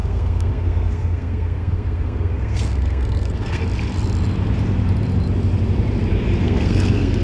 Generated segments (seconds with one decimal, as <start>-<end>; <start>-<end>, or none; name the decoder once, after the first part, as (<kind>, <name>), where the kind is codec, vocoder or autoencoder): 0.0-3.6 (codec, SNAC); 6.4-7.2